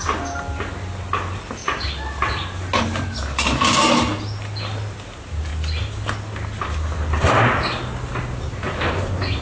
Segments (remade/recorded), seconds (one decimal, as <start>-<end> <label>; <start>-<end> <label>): 0.0-9.4 recorded